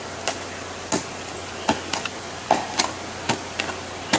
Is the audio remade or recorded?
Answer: recorded